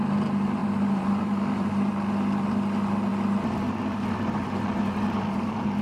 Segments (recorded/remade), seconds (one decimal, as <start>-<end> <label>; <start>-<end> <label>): 0.0-0.6 recorded; 0.6-1.7 remade; 1.7-5.8 recorded